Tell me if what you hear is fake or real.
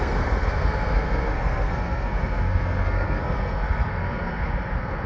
fake